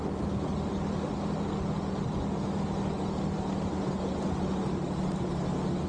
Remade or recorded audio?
recorded